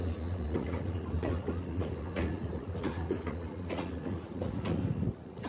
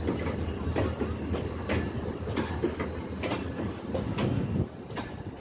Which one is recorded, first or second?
second